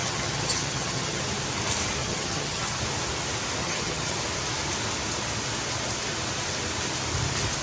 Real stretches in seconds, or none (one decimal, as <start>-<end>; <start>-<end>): 1.2-2.0; 2.8-3.6; 4.2-7.6